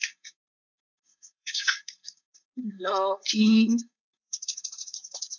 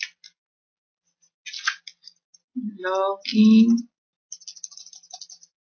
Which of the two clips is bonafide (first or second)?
second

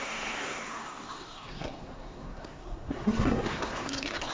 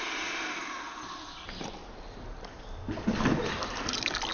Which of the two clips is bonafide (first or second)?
second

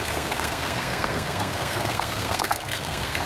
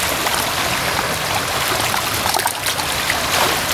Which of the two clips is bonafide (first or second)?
second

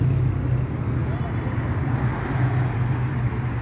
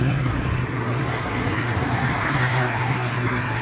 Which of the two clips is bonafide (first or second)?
first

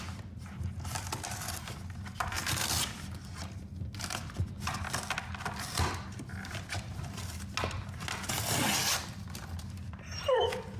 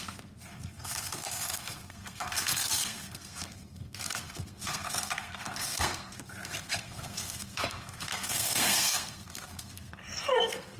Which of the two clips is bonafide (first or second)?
first